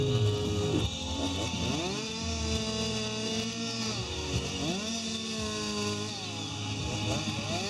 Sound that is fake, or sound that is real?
real